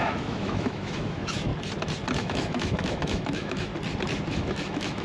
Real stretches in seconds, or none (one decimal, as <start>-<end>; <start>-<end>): 1.5-2.2; 3.7-4.3